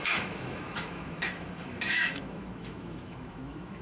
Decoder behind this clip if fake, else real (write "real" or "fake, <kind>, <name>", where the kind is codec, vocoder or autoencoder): fake, autoencoder, DAC-VAE